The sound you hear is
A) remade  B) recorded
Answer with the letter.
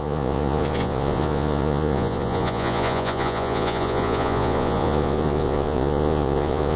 A